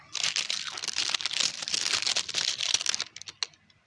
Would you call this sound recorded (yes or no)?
yes